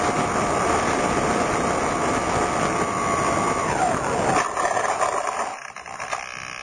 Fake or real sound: real